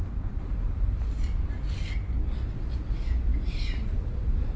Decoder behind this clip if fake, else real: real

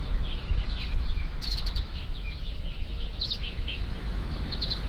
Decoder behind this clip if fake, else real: fake, autoencoder, DAC-VAE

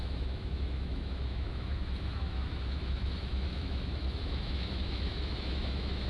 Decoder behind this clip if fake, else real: fake, autoencoder, DAC-VAE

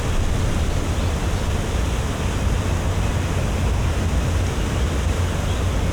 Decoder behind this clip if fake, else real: real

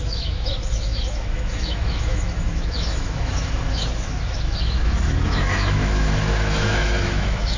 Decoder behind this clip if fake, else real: fake, autoencoder, DAC-VAE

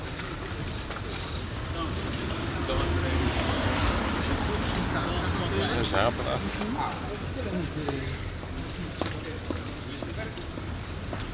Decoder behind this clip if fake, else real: real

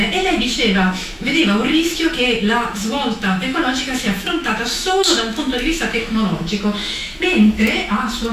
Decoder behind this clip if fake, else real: fake, autoencoder, DAC-VAE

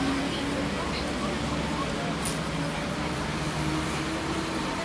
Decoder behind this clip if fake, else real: real